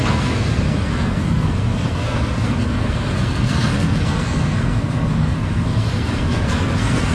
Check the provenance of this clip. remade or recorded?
remade